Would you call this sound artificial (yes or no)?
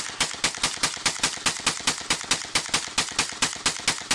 no